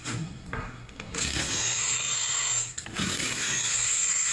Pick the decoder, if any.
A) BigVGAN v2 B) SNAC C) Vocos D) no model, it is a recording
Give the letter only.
B